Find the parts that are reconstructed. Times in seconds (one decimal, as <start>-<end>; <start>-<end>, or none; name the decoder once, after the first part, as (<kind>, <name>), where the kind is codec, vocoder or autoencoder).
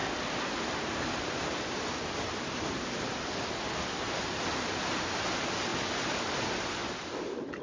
none